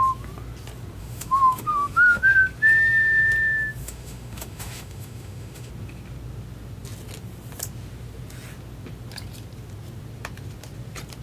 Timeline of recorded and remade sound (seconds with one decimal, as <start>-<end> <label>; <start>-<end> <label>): 0.0-1.0 recorded; 1.0-2.2 remade; 2.2-3.8 recorded; 3.8-5.7 remade; 5.7-11.2 recorded